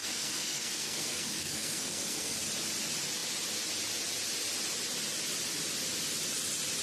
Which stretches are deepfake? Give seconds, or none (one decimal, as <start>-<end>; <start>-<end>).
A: 0.0-2.4